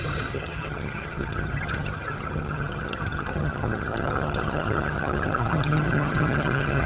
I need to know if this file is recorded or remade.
remade